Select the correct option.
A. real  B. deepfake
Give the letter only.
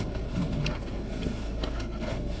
B